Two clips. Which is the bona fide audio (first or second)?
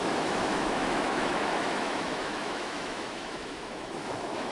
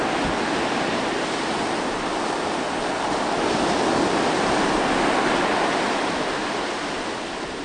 second